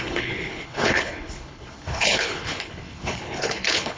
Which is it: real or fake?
fake